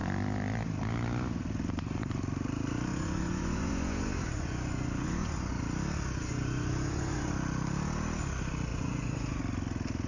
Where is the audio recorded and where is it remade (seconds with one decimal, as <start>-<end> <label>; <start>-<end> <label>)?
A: 0.0-2.9 recorded; 2.9-5.6 remade; 5.6-6.2 recorded; 6.2-7.3 remade; 7.3-8.7 recorded; 8.7-9.4 remade; 9.4-10.1 recorded